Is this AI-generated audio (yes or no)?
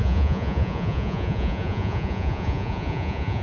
yes